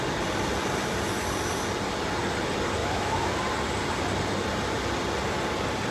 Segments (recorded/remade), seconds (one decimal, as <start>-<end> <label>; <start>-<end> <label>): 0.0-2.8 recorded; 2.8-3.3 remade; 3.3-5.9 recorded